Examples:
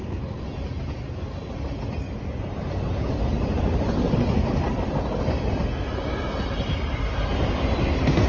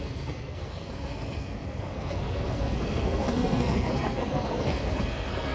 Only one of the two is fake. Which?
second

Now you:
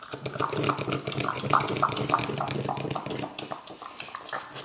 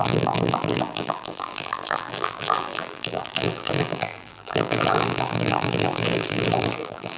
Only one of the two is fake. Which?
second